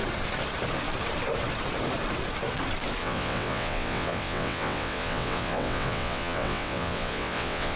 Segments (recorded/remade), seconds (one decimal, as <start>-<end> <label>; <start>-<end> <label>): 0.0-3.0 recorded; 3.0-7.8 remade